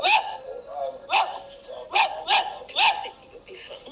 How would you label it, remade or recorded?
recorded